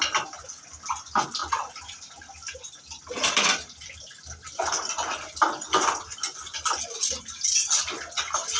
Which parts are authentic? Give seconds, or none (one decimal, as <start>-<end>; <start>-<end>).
0.0-8.6